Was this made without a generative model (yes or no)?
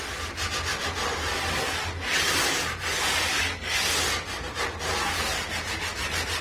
yes